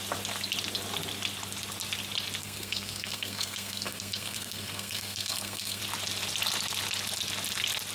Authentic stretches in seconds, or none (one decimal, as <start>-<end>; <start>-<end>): 0.0-2.4; 5.8-7.9